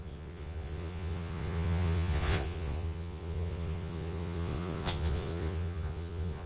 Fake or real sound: fake